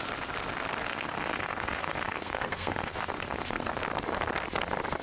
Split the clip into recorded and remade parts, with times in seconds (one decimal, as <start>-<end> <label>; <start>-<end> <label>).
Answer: 0.0-0.8 recorded; 0.8-3.8 remade; 3.8-5.0 recorded